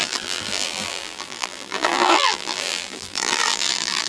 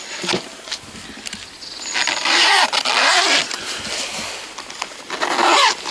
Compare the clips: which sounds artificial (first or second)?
first